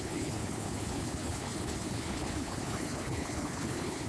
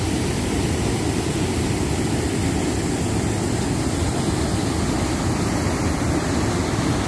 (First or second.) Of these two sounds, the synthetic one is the first